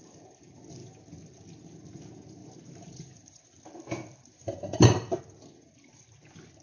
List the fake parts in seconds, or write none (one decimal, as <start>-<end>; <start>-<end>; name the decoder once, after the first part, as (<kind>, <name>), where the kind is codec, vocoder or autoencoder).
2.4-5.2 (vocoder, BigVGAN v2)